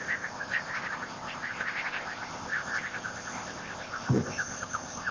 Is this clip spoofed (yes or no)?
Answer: yes